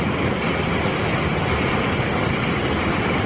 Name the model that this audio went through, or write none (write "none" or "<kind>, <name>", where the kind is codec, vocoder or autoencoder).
none